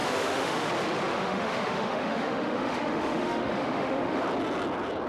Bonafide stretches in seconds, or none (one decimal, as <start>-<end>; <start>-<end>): 0.7-1.1; 4.2-5.1